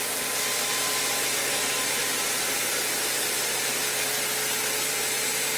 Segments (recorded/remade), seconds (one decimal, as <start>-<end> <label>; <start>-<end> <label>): 0.0-5.6 recorded